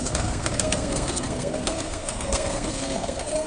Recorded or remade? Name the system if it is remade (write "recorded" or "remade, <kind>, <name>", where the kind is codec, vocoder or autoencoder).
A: remade, codec, SNAC